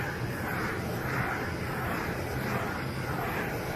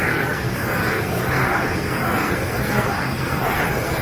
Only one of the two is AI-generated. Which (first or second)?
second